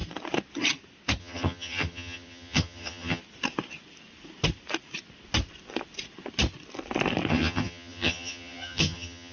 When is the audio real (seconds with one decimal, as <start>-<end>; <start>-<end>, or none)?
0.0-1.2; 3.2-7.3